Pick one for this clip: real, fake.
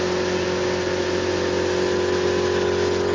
real